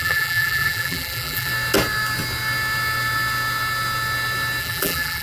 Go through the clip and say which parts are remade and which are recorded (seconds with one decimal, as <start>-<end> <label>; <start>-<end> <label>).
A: 0.0-1.5 remade; 1.5-4.6 recorded; 4.6-5.2 remade